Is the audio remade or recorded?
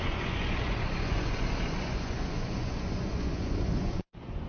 remade